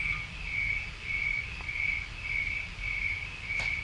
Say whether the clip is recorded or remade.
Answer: recorded